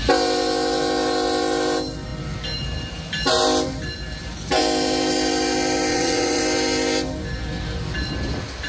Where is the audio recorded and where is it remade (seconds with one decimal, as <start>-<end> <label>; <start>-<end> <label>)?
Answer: 0.0-5.9 recorded; 5.9-6.4 remade; 6.4-8.7 recorded